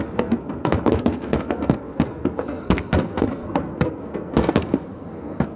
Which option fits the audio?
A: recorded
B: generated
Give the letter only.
B